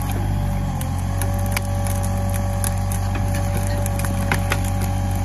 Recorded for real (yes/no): yes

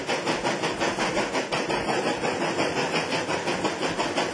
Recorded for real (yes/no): yes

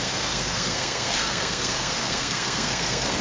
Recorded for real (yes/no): no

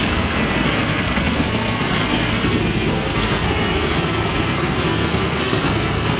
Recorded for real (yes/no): no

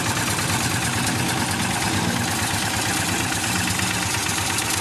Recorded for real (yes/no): yes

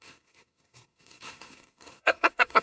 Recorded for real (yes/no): no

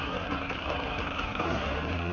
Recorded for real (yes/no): no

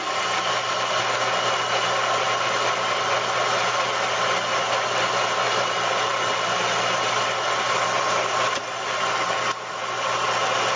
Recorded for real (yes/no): yes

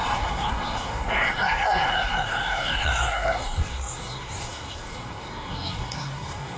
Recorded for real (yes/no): no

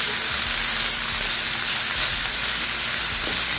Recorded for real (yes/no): yes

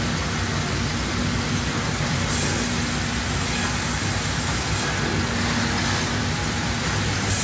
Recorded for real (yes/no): yes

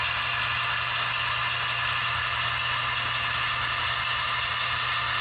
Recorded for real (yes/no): yes